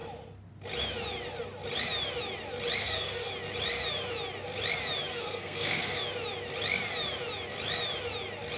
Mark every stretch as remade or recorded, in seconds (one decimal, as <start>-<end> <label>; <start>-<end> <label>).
0.0-2.8 recorded; 2.8-3.3 remade; 3.3-5.1 recorded; 5.1-6.0 remade; 6.0-8.6 recorded